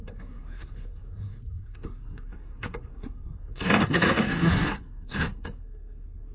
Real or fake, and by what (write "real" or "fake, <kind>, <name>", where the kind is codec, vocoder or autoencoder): fake, codec, SNAC